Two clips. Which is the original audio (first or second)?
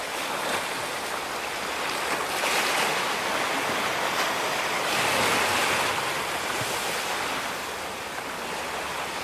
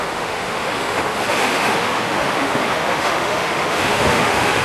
first